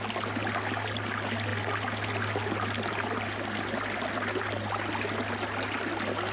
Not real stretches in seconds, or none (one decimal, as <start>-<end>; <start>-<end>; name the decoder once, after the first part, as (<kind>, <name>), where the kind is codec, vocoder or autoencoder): none